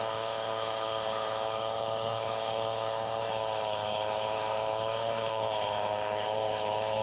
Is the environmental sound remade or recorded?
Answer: remade